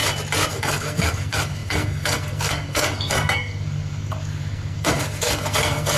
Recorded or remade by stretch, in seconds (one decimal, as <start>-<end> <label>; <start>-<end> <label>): 0.0-0.5 recorded; 0.5-6.0 remade